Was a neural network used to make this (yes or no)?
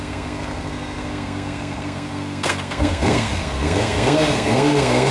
yes